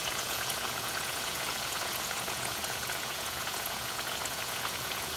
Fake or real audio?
fake